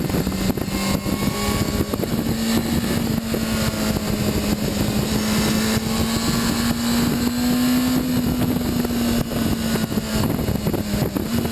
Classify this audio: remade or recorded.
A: recorded